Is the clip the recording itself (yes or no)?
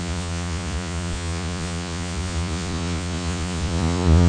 no